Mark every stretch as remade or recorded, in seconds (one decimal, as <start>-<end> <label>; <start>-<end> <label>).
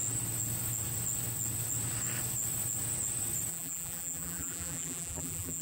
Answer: 0.0-3.5 recorded; 3.5-5.6 remade